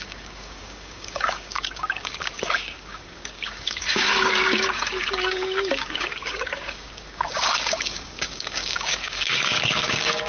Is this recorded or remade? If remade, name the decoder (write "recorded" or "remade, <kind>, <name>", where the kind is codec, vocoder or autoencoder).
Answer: remade, codec, DAC